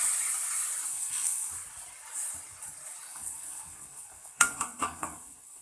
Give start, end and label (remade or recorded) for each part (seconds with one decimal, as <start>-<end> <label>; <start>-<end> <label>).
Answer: 0.0-0.9 recorded; 0.9-1.5 remade; 1.5-3.1 recorded; 3.1-5.6 remade